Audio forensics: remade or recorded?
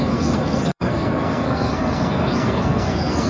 remade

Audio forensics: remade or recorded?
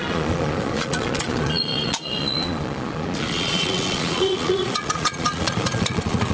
remade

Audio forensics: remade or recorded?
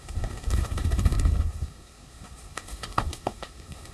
remade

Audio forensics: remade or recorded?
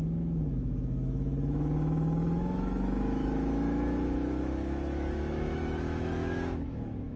remade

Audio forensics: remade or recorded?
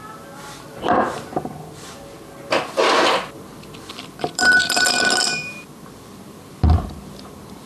remade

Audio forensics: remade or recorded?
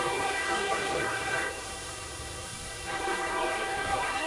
remade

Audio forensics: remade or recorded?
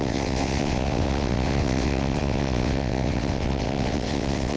remade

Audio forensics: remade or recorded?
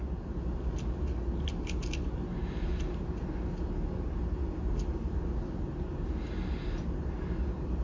recorded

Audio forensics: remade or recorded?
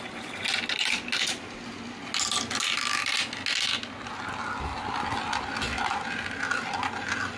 recorded